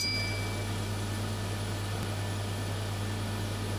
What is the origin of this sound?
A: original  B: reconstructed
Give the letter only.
A